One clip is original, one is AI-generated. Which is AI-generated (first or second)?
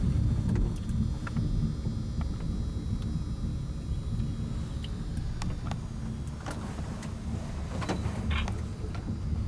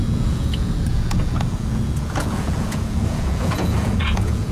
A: second